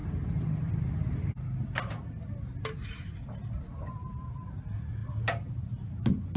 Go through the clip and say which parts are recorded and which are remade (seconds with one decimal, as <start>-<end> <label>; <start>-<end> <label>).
0.0-6.4 recorded